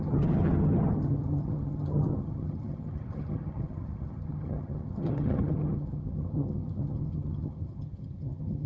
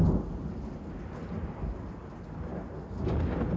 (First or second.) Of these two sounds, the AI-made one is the first